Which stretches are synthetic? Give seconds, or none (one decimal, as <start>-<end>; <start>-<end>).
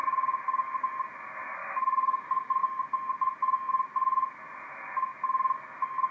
1.6-2.2